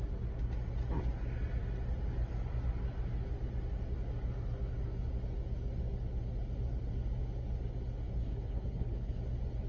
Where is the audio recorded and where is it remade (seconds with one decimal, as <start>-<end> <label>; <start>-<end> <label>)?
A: 0.0-8.2 recorded; 8.2-9.2 remade; 9.2-9.7 recorded